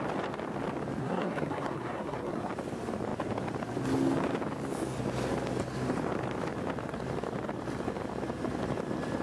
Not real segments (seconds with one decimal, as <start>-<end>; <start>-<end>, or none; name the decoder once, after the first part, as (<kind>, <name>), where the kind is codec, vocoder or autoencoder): 1.0-2.5 (codec, SNAC)